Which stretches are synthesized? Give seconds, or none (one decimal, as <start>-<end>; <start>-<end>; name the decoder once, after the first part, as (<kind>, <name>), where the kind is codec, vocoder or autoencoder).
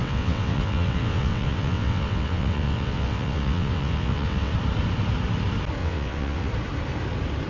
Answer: 0.0-4.5 (vocoder, WaveNeXt); 5.8-6.5